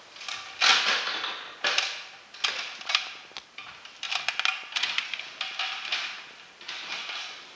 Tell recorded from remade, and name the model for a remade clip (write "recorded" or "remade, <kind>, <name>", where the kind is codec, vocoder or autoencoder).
recorded